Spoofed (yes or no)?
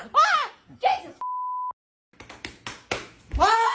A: no